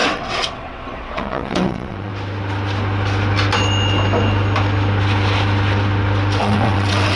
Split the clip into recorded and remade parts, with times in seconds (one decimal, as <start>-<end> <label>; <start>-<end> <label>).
0.0-2.1 remade; 2.1-6.4 recorded; 6.4-7.2 remade